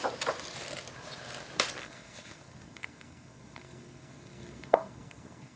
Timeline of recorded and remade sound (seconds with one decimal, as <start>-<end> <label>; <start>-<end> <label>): 0.0-1.8 recorded; 1.8-5.6 remade